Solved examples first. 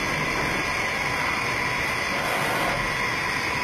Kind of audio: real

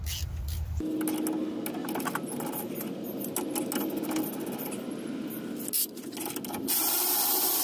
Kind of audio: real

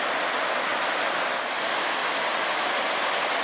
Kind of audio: real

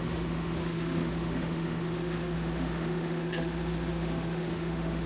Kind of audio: fake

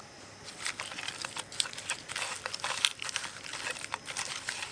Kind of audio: real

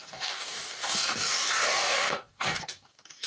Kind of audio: fake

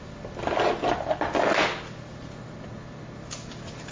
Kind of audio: real